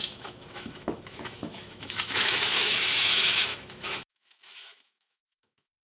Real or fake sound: fake